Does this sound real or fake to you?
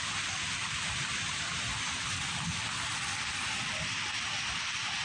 real